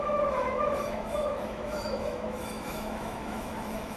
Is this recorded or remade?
remade